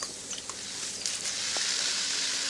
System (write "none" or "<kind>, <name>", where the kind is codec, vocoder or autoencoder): none